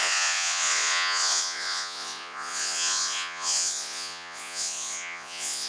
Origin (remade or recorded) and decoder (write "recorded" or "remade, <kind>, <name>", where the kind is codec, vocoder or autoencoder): remade, vocoder, Vocos